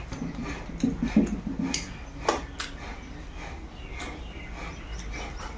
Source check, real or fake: real